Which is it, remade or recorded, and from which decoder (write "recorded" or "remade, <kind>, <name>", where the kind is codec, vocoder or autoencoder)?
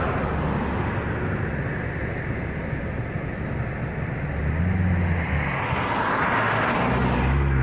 recorded